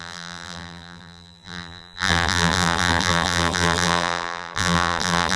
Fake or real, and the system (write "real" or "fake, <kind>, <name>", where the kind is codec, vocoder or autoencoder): fake, vocoder, BigVGAN v2